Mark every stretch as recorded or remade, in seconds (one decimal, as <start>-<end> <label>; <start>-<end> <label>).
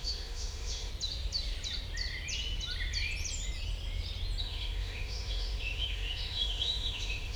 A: 0.0-0.9 remade; 0.9-4.4 recorded; 4.4-7.4 remade